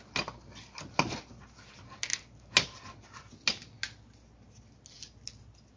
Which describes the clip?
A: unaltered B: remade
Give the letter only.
A